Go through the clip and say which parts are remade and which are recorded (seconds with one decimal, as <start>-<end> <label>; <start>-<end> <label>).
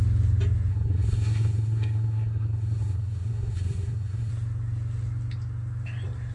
0.0-0.7 recorded; 0.7-4.3 remade; 4.3-6.3 recorded